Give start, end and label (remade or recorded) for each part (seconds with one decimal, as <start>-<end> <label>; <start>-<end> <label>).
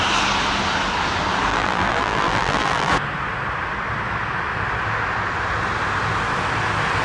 0.0-1.5 recorded; 1.5-2.9 remade; 2.9-7.0 recorded